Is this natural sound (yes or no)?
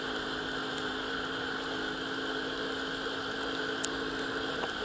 yes